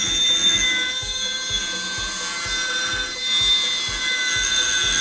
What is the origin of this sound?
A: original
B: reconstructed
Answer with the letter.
A